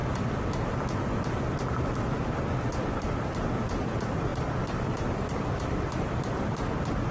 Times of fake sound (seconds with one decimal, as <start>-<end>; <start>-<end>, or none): 2.8-7.1